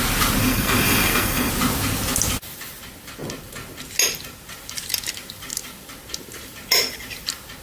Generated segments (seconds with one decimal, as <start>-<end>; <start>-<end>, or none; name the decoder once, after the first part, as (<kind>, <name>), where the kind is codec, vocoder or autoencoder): 0.4-1.5 (codec, SNAC)